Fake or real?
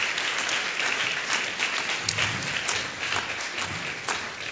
real